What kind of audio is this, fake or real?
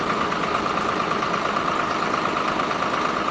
real